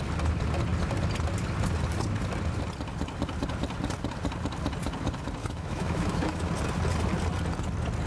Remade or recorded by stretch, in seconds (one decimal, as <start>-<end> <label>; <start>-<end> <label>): 0.0-5.4 recorded; 5.4-6.5 remade; 6.5-8.1 recorded